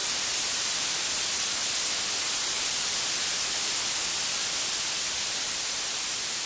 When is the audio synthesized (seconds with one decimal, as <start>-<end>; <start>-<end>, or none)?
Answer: none

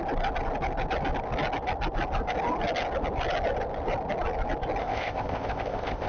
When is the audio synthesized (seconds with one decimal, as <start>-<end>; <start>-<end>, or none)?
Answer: 4.8-6.1